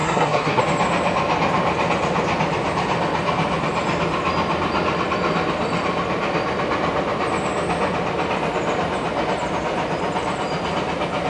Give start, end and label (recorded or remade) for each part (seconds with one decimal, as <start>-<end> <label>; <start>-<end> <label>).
0.0-0.6 remade; 0.6-11.3 recorded